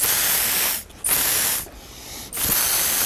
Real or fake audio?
real